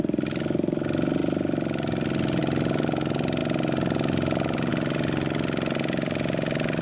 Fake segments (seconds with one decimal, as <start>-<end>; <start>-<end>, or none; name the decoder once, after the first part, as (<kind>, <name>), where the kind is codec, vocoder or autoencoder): none